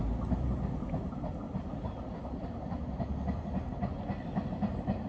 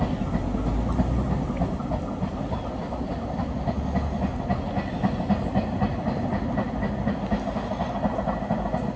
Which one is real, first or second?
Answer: second